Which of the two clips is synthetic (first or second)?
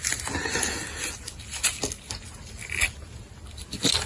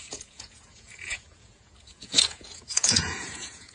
second